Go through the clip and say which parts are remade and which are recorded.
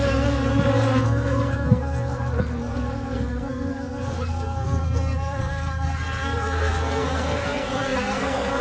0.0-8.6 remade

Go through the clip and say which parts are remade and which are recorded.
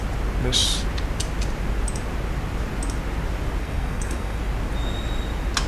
0.0-3.6 recorded; 3.6-4.4 remade; 4.4-5.7 recorded